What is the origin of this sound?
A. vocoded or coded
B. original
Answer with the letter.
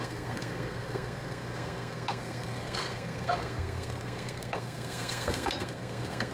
A